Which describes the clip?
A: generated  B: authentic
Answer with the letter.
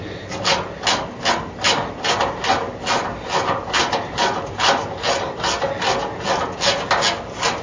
B